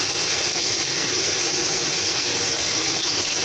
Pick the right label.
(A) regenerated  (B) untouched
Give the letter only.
A